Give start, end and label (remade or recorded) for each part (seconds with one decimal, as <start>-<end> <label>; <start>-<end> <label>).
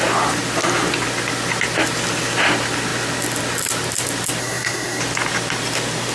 0.0-4.4 recorded; 4.4-5.0 remade; 5.0-6.1 recorded